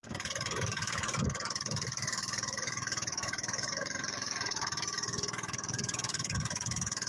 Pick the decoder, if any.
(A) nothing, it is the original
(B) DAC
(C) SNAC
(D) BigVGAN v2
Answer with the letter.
B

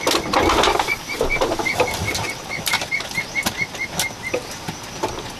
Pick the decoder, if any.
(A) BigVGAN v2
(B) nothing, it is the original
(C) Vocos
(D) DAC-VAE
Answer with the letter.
B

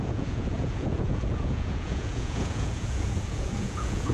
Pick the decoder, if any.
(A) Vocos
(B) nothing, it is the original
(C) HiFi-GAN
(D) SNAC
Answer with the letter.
A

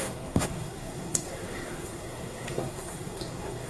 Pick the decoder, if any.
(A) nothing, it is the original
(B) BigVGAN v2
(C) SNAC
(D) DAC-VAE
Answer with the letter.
C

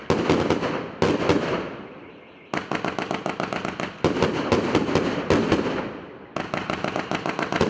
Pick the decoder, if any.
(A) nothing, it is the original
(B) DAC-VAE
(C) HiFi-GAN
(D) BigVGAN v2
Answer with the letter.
A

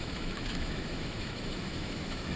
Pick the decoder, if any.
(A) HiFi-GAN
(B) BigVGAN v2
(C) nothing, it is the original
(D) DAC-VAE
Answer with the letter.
D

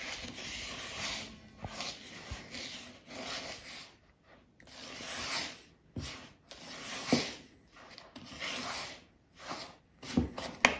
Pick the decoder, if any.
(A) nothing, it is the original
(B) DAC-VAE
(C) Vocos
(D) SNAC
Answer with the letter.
A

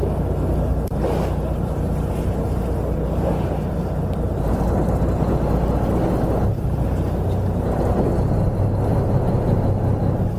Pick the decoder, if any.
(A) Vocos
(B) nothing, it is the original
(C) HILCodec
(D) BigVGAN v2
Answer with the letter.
B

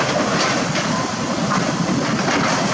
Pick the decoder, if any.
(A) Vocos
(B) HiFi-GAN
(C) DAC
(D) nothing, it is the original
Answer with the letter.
D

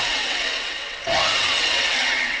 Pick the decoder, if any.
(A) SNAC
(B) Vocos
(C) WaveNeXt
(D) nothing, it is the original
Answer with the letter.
C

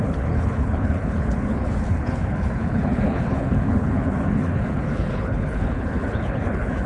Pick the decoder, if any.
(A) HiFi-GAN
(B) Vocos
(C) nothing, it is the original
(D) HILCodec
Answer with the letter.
D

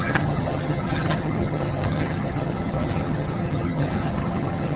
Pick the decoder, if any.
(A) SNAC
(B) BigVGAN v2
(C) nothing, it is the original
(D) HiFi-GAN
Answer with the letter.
D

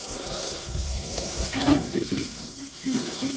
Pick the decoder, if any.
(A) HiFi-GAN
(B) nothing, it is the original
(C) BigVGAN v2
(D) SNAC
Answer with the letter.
D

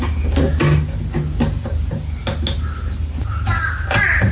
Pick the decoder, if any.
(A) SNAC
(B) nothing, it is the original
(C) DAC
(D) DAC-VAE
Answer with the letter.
B